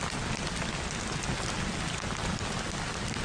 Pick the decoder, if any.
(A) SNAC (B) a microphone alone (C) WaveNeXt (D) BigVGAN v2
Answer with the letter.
B